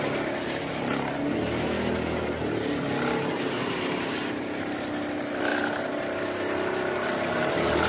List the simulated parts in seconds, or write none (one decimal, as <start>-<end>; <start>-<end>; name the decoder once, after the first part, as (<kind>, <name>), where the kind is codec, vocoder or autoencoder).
none